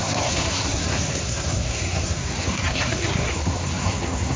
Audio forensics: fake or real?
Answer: fake